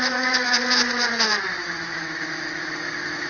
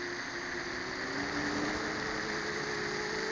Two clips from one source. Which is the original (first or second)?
second